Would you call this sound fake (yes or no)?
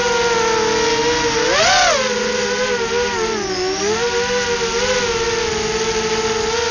no